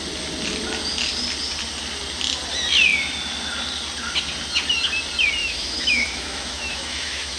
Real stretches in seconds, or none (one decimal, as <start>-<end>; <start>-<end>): 0.0-5.4